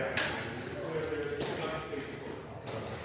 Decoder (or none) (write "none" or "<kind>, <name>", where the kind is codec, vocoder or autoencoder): none